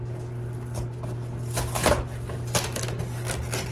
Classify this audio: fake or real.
real